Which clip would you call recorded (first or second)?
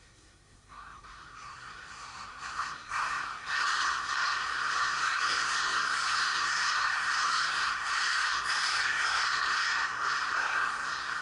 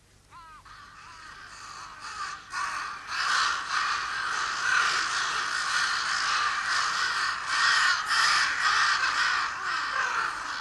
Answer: second